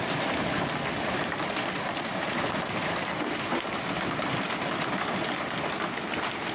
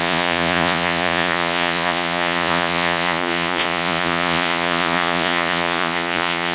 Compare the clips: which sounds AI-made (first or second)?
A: second